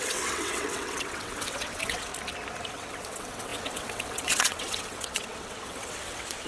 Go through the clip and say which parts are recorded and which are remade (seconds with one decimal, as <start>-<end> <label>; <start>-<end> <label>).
0.0-2.1 remade; 2.1-2.7 recorded; 2.7-6.5 remade